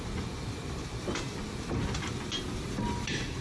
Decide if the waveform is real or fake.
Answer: real